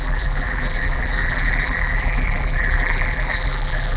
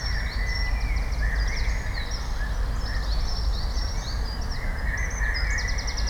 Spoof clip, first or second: first